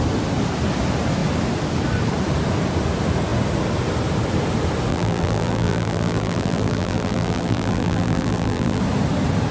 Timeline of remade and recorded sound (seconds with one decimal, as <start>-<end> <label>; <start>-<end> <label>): 0.0-4.9 recorded; 4.9-8.8 remade; 8.8-9.5 recorded